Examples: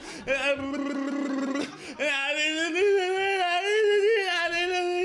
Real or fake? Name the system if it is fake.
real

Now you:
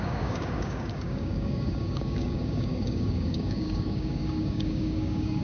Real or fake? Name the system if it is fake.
fake, codec, DAC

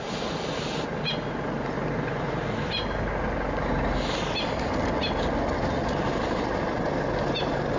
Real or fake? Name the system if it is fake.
real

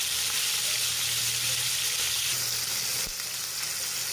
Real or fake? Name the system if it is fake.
real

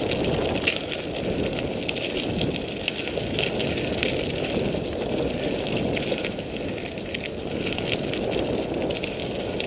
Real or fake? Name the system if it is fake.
real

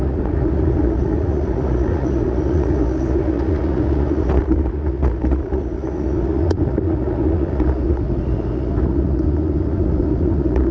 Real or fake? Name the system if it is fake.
fake, vocoder, Vocos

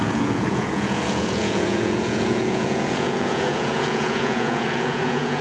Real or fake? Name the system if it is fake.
fake, vocoder, Vocos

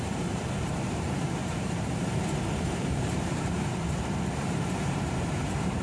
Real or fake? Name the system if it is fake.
fake, vocoder, BigVGAN v2